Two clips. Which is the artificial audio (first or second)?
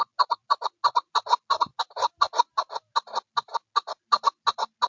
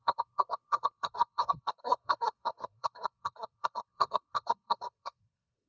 second